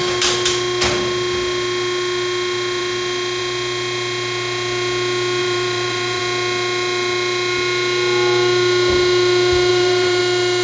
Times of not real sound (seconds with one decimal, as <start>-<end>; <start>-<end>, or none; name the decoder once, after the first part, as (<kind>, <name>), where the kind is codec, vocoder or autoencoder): 5.4-6.2 (vocoder, BigVGAN v2); 9.7-10.2